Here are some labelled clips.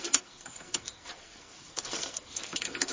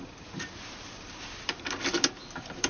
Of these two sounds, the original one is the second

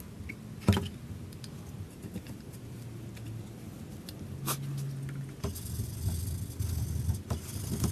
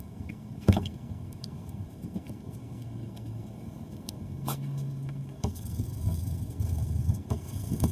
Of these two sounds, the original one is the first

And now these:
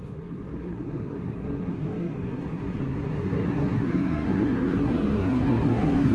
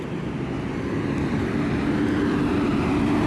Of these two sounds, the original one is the second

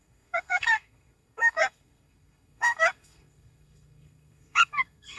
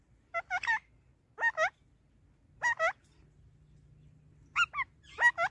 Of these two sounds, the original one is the second